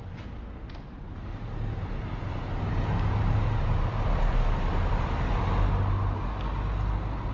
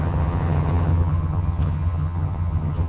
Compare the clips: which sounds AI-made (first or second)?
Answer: second